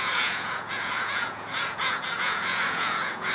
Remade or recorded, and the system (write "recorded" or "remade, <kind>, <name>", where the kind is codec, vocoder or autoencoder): remade, vocoder, Vocos